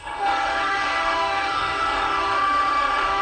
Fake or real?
fake